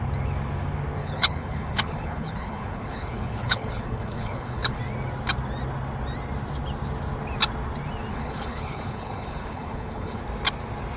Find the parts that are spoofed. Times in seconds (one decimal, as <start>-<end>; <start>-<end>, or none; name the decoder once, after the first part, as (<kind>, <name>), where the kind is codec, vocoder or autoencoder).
1.0-4.8 (codec, HILCodec); 8.1-10.2